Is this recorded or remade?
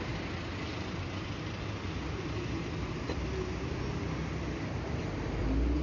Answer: recorded